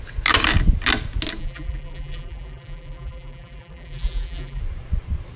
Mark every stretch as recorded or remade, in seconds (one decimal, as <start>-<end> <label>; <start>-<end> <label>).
0.0-1.4 recorded; 1.4-4.6 remade; 4.6-5.4 recorded